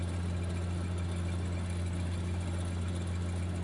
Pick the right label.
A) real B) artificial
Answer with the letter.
A